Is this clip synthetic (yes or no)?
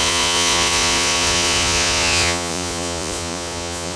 yes